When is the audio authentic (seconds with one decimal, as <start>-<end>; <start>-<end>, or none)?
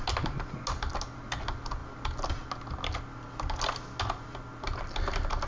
0.0-5.5